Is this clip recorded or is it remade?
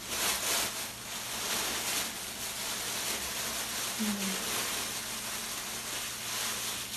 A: recorded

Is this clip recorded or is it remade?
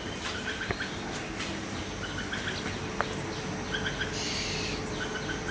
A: recorded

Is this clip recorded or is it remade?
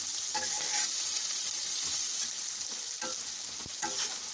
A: recorded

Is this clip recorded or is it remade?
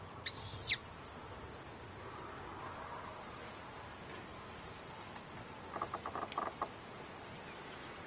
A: recorded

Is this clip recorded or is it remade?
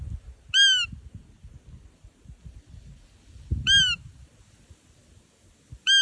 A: recorded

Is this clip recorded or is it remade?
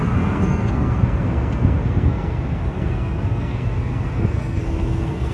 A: remade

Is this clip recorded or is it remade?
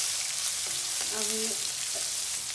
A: recorded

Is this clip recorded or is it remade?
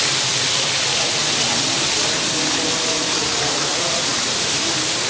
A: recorded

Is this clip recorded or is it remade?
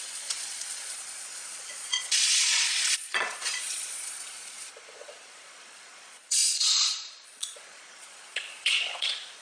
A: remade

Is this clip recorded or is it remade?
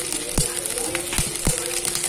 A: recorded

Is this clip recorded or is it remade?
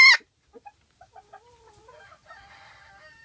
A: recorded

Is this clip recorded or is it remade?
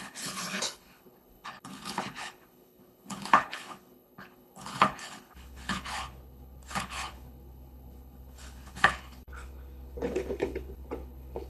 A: remade